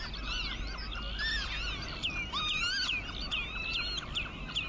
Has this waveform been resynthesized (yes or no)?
no